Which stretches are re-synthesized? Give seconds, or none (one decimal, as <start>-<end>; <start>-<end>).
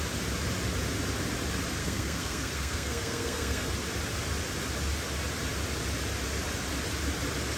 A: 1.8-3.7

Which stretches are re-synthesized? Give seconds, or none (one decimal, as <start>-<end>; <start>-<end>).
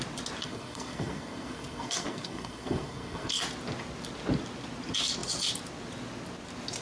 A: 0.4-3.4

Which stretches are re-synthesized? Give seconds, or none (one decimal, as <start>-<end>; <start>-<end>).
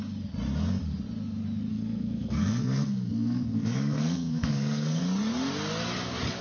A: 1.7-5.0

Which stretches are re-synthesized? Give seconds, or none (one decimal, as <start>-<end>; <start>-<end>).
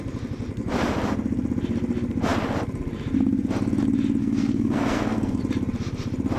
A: 4.2-5.4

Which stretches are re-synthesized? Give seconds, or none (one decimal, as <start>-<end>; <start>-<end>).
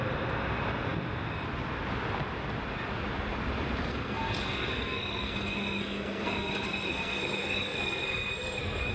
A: 3.9-8.9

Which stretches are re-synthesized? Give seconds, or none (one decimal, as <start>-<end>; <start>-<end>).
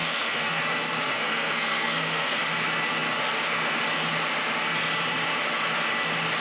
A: 0.0-0.6; 1.1-2.4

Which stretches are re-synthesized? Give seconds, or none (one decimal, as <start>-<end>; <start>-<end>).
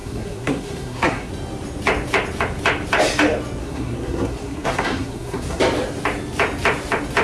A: 0.0-1.3; 3.6-5.6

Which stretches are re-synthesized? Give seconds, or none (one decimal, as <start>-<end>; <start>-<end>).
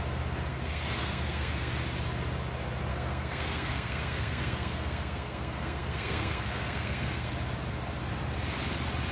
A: 0.5-1.7; 2.9-7.3